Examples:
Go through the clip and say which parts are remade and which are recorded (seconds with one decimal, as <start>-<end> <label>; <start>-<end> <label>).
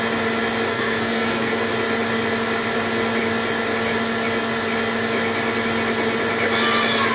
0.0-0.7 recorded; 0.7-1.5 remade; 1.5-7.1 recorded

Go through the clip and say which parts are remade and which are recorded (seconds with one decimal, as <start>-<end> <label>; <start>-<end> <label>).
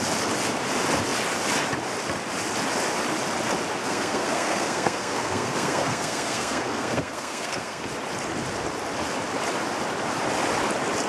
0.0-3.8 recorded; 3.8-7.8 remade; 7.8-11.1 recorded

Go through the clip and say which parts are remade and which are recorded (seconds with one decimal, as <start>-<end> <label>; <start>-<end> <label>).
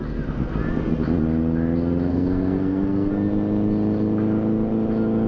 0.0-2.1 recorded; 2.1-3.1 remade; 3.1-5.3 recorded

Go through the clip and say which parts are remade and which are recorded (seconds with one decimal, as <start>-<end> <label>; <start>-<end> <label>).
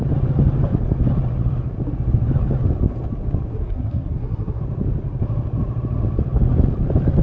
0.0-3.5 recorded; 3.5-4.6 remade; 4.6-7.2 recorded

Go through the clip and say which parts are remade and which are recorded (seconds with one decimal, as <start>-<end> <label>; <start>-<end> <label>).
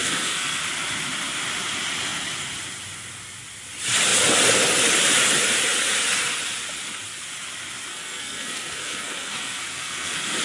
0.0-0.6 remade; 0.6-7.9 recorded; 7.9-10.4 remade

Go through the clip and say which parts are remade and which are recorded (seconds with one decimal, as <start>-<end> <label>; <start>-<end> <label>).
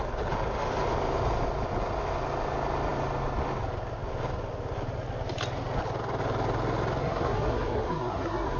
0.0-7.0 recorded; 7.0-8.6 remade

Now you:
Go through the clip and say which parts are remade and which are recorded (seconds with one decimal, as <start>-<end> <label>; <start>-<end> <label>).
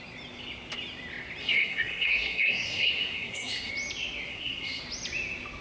0.0-1.4 recorded; 1.4-3.7 remade; 3.7-4.3 recorded; 4.3-4.8 remade; 4.8-5.6 recorded